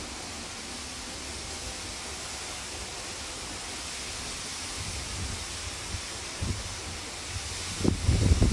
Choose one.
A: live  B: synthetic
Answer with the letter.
A